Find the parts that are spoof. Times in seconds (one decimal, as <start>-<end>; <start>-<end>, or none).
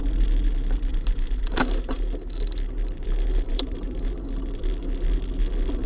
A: 0.9-4.1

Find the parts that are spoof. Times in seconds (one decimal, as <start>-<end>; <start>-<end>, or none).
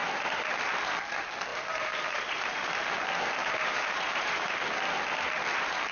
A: 0.0-0.6; 1.5-2.7; 3.4-4.5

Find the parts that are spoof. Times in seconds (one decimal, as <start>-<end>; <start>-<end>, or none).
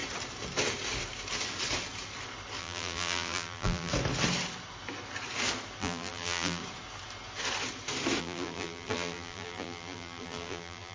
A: 2.6-3.9; 5.8-6.6; 8.2-10.9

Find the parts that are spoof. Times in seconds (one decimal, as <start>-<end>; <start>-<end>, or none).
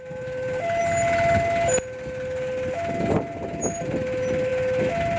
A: 0.0-0.8; 3.8-4.5